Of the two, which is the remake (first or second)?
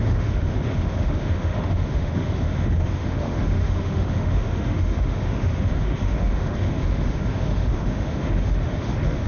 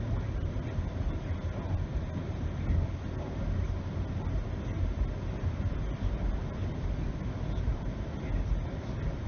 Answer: first